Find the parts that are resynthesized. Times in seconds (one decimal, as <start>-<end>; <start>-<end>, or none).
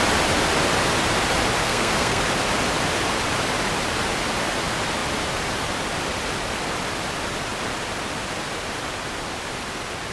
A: 1.6-2.2